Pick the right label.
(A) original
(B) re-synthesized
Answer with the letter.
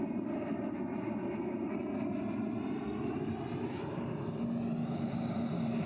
A